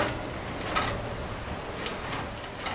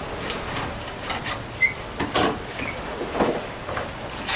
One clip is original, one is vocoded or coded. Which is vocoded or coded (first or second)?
second